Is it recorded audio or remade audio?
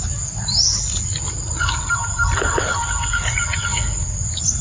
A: recorded